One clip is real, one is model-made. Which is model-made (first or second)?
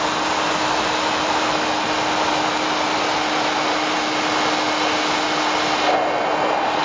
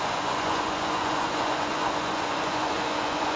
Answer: second